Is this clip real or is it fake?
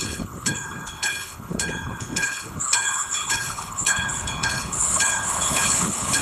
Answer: fake